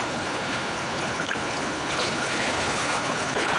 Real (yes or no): no